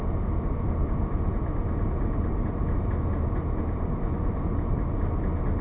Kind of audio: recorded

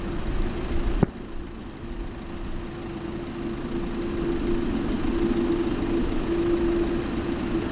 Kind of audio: recorded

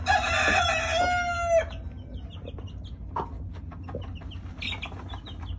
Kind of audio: recorded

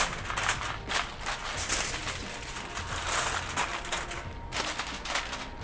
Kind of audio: recorded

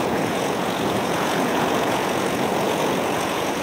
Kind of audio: remade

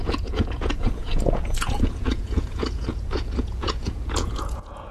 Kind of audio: remade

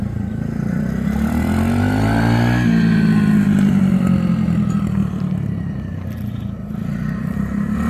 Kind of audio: recorded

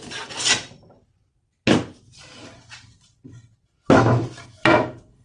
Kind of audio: recorded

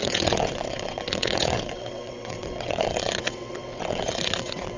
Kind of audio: remade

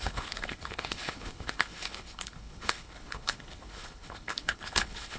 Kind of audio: remade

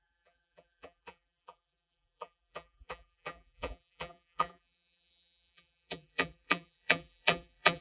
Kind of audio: remade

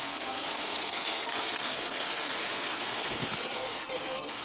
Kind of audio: remade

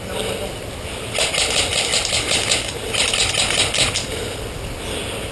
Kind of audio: recorded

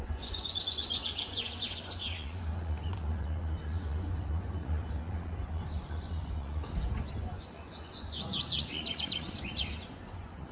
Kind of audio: remade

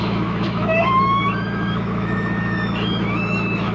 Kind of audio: remade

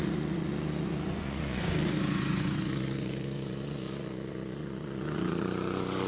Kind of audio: remade